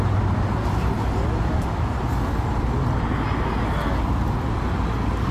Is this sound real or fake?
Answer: real